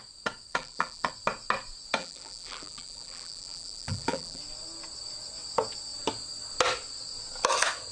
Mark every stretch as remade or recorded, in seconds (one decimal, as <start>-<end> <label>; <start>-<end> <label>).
0.0-0.5 recorded; 0.5-1.1 remade; 1.1-2.0 recorded; 2.0-4.4 remade; 4.4-7.9 recorded